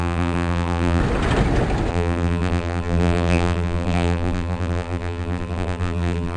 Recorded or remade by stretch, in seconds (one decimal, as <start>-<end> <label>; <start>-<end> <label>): 0.0-1.0 remade; 1.0-1.9 recorded; 1.9-6.4 remade